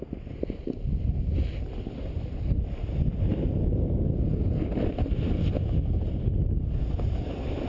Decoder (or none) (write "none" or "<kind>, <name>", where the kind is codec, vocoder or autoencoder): none